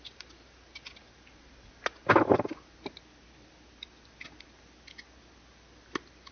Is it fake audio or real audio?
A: real